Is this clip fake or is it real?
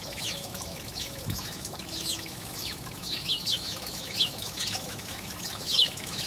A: fake